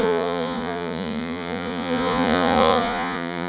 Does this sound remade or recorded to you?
remade